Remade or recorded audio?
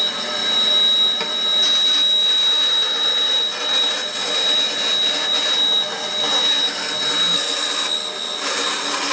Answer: recorded